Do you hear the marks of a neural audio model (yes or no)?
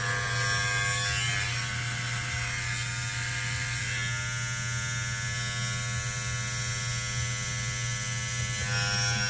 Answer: no